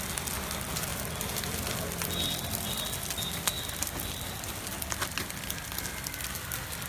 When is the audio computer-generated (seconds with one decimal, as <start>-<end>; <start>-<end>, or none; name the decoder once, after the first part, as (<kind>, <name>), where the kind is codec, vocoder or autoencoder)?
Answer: none